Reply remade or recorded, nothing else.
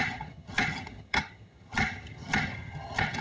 remade